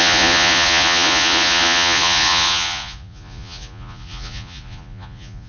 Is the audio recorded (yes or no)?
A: no